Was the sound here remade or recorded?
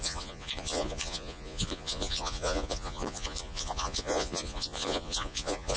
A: remade